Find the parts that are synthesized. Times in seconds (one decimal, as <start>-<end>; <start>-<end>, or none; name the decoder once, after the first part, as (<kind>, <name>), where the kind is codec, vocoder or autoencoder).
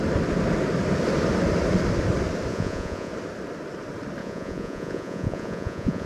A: 2.5-3.1 (vocoder, Vocos); 4.2-6.1